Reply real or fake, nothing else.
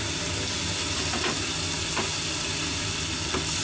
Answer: real